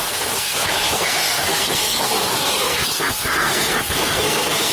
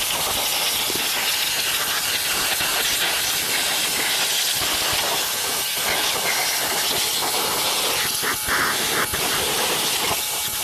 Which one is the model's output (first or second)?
first